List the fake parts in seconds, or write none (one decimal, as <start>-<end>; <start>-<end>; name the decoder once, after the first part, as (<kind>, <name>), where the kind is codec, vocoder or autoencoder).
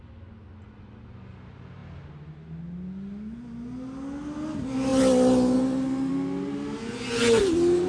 none